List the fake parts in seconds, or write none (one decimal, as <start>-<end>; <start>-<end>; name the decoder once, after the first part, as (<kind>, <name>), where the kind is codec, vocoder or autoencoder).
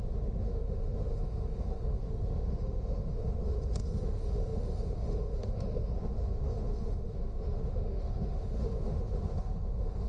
0.0-10.1 (autoencoder, DAC-VAE)